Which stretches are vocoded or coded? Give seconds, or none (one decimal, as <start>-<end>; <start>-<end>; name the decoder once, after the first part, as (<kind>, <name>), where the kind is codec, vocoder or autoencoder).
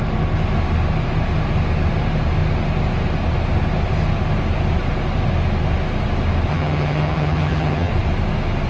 6.5-7.9 (vocoder, HiFi-GAN)